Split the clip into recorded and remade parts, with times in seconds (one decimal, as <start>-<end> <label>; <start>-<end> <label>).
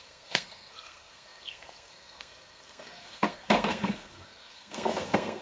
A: 0.0-5.4 remade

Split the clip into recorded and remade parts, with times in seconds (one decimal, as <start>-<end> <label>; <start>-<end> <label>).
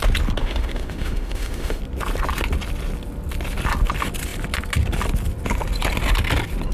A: 0.0-0.4 recorded; 0.4-1.8 remade; 1.8-6.7 recorded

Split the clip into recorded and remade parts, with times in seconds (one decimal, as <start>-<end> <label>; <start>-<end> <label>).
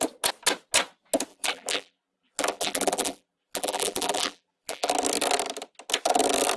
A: 0.0-1.3 recorded; 1.3-4.9 remade; 4.9-6.6 recorded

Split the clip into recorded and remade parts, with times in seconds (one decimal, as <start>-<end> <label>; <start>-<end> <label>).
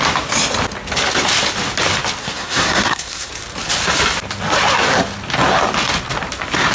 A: 0.0-2.2 recorded; 2.2-3.3 remade; 3.3-6.7 recorded